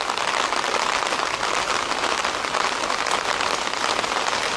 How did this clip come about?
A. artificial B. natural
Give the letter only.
B